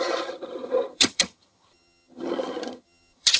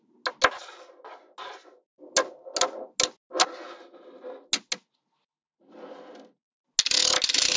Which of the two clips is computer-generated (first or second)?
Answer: first